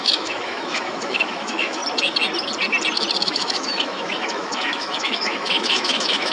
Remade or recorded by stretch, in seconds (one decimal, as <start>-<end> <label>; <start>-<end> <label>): 0.0-1.8 remade; 1.8-3.2 recorded; 3.2-6.3 remade